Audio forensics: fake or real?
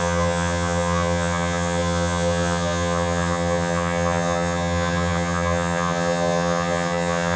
fake